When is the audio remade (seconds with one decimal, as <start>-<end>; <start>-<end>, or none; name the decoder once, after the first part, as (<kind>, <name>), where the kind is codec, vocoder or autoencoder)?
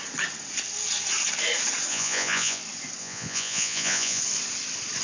1.9-2.6 (vocoder, Vocos); 3.0-4.2